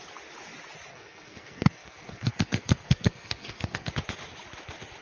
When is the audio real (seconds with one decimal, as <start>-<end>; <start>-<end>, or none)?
0.0-0.9; 3.9-5.0